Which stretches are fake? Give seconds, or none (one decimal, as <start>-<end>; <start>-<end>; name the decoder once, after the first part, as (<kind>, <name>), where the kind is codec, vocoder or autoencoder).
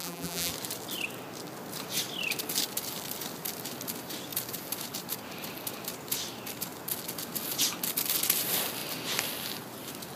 0.0-0.5 (vocoder, BigVGAN v2)